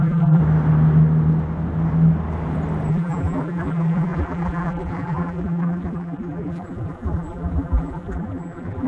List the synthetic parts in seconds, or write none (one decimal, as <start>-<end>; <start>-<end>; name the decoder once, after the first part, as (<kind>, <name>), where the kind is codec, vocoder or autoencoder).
0.0-0.4 (vocoder, BigVGAN v2); 2.9-8.9